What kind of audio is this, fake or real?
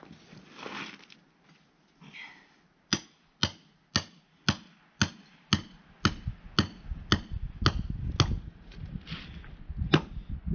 real